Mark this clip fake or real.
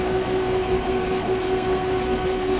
fake